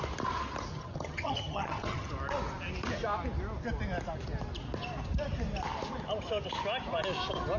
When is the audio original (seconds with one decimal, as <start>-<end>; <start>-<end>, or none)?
0.0-0.7; 2.1-7.6